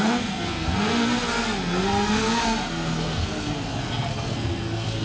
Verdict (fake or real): fake